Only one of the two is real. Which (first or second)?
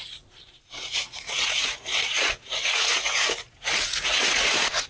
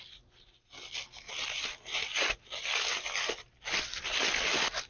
second